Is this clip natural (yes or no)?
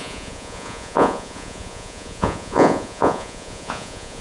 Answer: no